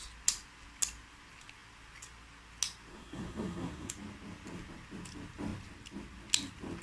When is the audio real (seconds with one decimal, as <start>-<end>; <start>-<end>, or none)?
0.0-2.9; 3.9-6.8